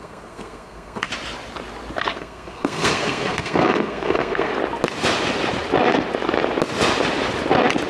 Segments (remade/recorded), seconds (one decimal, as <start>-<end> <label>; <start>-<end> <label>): 0.0-1.1 remade; 1.1-2.1 recorded; 2.1-4.5 remade; 4.5-7.9 recorded